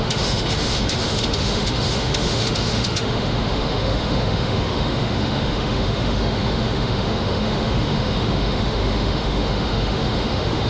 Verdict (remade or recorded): remade